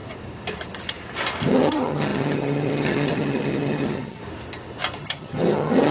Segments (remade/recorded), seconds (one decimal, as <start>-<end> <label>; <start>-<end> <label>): 0.0-1.5 recorded; 1.5-4.2 remade; 4.2-5.0 recorded; 5.0-5.9 remade